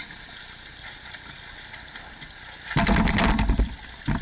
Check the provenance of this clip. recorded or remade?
recorded